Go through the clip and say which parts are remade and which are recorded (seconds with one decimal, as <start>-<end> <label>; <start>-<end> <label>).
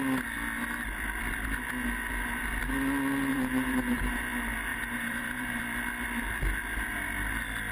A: 0.0-3.3 recorded; 3.3-4.2 remade; 4.2-4.7 recorded; 4.7-5.6 remade; 5.6-7.7 recorded